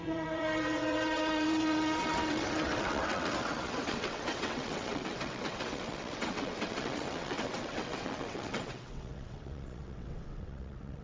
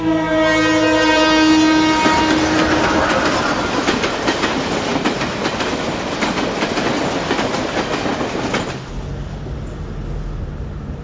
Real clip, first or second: second